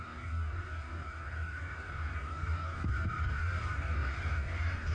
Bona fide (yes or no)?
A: no